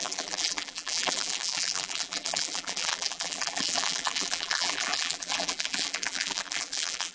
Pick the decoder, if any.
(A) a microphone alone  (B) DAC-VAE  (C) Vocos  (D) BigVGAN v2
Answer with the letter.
D